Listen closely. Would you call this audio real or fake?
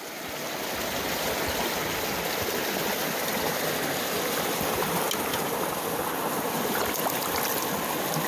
real